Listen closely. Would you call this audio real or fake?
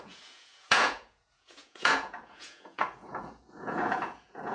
fake